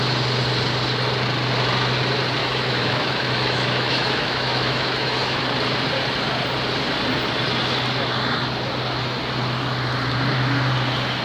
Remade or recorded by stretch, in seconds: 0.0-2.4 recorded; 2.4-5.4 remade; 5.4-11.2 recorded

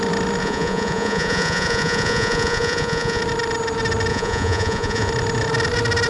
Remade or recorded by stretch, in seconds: 0.0-0.4 recorded; 0.4-3.2 remade; 3.2-4.1 recorded; 4.1-5.1 remade; 5.1-6.1 recorded